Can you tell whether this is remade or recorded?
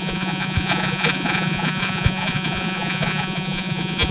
remade